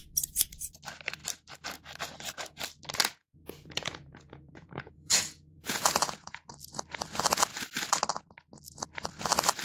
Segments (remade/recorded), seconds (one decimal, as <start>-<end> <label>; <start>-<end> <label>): 0.0-3.2 recorded; 3.2-6.5 remade; 6.5-9.6 recorded